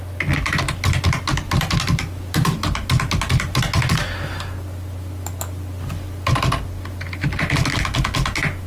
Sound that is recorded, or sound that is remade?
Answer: recorded